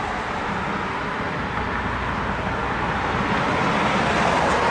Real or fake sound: real